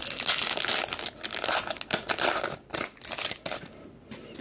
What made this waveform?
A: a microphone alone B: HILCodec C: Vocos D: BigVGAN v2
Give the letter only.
A